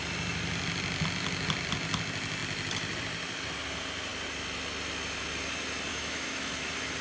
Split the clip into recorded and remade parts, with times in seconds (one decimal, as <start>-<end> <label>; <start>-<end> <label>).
0.0-5.9 recorded; 5.9-6.5 remade; 6.5-7.0 recorded